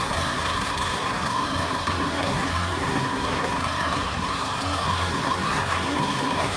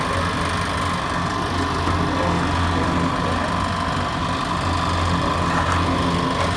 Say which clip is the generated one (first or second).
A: first